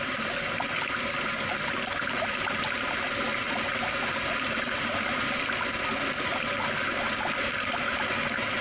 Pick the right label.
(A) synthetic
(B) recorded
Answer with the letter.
B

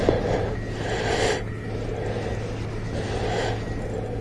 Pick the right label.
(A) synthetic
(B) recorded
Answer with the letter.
B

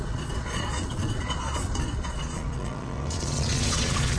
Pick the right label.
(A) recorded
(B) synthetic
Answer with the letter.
B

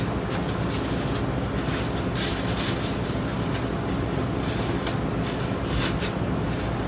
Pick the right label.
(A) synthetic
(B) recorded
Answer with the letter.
B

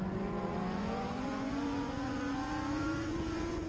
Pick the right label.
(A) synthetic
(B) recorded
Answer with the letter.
A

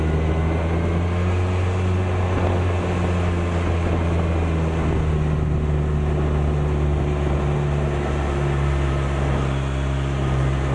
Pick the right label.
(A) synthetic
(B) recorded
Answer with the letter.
B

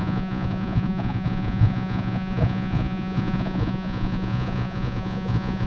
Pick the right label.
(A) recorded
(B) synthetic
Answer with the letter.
B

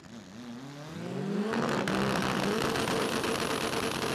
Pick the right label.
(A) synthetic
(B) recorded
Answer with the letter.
B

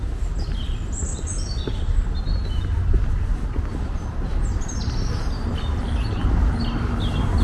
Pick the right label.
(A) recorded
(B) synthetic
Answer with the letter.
A